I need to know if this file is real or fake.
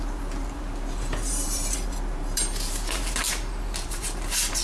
fake